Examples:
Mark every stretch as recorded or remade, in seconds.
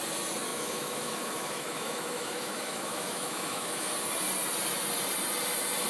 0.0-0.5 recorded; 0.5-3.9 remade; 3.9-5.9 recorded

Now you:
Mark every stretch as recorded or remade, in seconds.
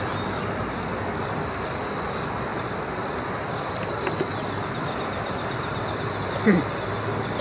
0.0-7.4 recorded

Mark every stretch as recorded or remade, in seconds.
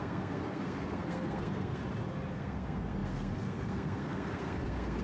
0.0-1.8 remade; 1.8-2.3 recorded; 2.3-5.0 remade